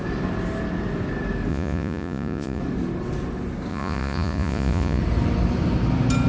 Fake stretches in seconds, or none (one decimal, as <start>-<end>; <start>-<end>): 1.5-2.6; 3.7-5.0